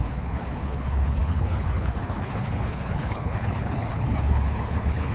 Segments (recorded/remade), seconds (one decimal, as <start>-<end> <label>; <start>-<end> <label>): 0.0-5.1 remade